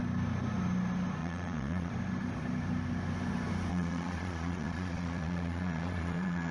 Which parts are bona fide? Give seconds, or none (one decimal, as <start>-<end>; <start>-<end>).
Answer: 0.0-1.2; 1.9-3.7